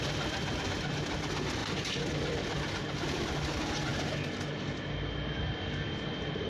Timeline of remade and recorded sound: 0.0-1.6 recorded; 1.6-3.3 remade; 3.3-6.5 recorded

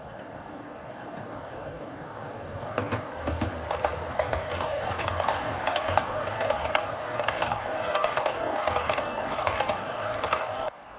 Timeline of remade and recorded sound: 0.0-3.5 remade; 3.5-4.1 recorded; 4.1-11.0 remade